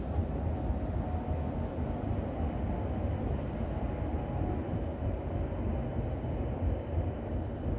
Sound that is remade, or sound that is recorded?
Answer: recorded